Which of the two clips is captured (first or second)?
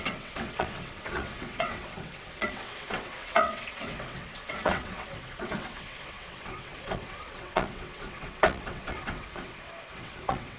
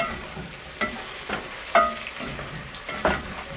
second